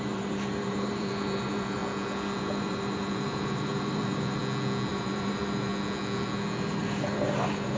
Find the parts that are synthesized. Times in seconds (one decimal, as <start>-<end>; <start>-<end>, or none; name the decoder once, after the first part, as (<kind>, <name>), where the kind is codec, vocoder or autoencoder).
0.0-1.8 (vocoder, BigVGAN v2); 2.4-4.4; 4.9-5.7; 6.8-7.8